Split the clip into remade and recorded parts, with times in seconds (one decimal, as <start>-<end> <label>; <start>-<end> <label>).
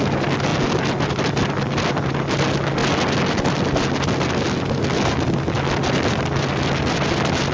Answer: 0.0-7.5 recorded